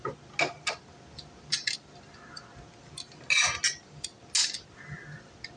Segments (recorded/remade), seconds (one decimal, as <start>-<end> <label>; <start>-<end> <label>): 0.0-5.6 recorded